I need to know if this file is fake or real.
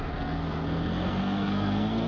fake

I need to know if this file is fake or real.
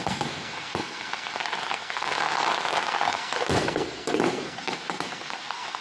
fake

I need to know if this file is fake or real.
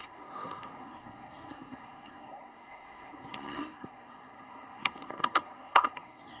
fake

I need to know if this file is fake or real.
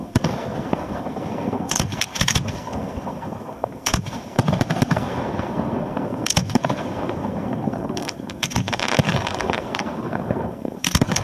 fake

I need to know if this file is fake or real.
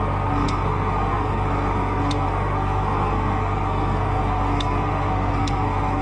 fake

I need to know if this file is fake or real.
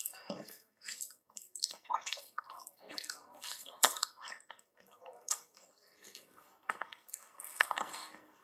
fake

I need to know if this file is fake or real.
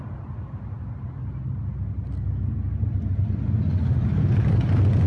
real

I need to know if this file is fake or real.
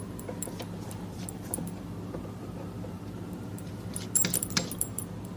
real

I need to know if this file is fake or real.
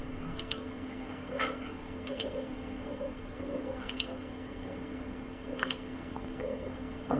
fake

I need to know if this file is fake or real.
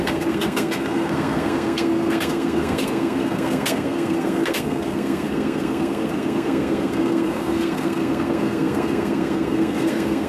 fake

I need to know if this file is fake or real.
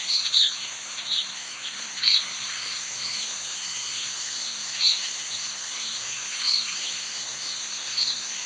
fake